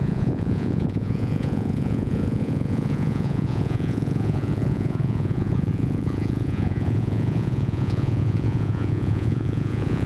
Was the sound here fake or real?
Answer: fake